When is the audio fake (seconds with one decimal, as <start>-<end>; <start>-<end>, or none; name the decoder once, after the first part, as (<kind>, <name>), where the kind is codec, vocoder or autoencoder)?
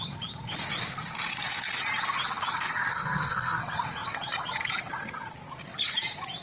2.9-3.6 (codec, SNAC)